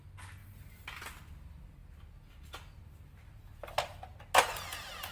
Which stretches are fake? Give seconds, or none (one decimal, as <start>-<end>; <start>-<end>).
none